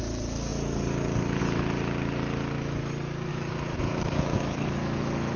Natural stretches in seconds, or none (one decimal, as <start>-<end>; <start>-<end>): 0.0-3.3